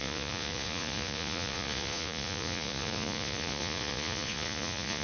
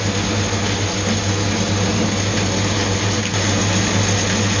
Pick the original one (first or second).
second